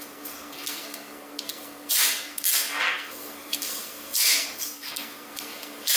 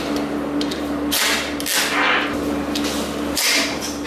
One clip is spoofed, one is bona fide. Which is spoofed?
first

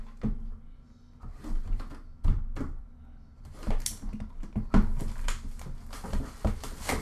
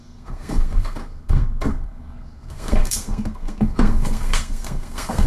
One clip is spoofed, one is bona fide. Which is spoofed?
second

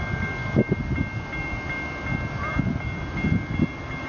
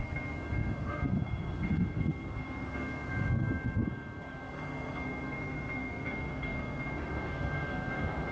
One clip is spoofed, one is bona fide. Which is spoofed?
second